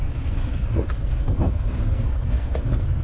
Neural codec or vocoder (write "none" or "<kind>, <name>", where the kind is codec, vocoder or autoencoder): codec, SNAC